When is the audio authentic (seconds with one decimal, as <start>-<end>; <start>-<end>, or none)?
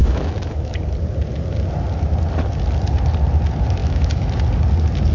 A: 0.8-3.8; 4.3-5.1